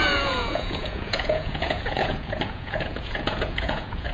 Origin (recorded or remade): remade